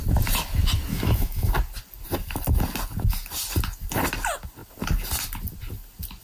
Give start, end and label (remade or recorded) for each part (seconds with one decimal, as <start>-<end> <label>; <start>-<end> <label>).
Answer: 0.0-0.9 recorded; 0.9-1.5 remade; 1.5-6.2 recorded